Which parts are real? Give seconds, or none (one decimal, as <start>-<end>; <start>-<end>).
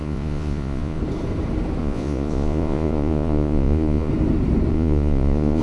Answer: 1.0-1.8; 4.1-4.7